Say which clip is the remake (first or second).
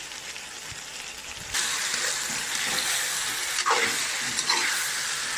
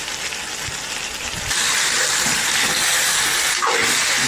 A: first